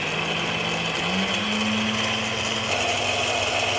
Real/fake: real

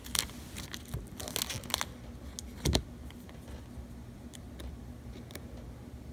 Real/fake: real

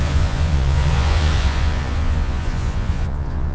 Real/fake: fake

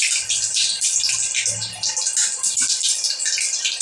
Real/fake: real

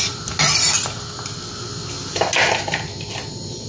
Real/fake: real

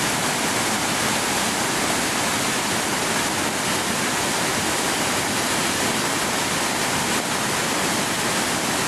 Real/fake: real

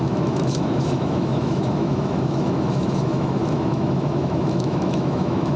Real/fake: fake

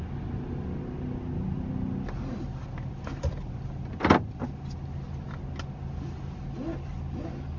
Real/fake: real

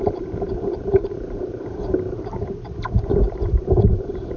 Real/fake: fake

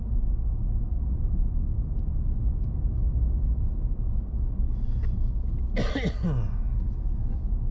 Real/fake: real